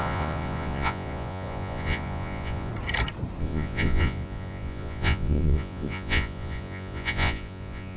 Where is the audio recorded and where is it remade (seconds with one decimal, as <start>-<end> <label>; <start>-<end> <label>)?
0.0-2.7 remade; 2.7-3.4 recorded; 3.4-8.0 remade